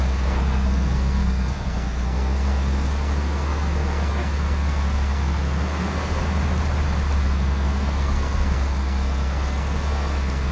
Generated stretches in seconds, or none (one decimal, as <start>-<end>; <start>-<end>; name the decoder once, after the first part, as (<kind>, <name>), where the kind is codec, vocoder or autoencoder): 0.0-6.4 (codec, SNAC); 7.2-10.5